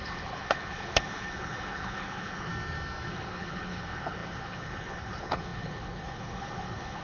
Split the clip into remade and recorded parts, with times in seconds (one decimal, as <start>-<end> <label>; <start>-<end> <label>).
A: 0.0-2.5 remade; 2.5-3.1 recorded; 3.1-7.0 remade